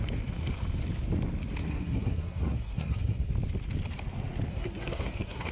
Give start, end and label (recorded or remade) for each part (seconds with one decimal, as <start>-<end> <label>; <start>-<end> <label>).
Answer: 0.0-1.6 recorded; 1.6-3.3 remade; 3.3-4.5 recorded; 4.5-5.5 remade